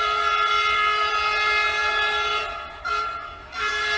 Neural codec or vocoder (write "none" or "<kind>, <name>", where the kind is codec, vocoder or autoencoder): none